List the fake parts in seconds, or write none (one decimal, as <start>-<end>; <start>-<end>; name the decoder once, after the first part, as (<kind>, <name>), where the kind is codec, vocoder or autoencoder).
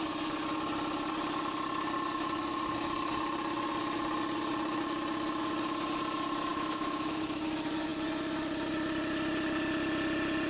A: 6.5-7.4 (autoencoder, DAC-VAE)